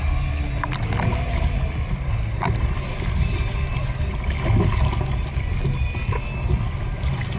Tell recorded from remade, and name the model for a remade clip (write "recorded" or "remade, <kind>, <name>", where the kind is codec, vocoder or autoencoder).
recorded